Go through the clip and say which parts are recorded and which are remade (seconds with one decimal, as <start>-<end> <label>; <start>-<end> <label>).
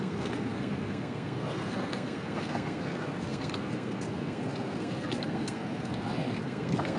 0.0-7.0 remade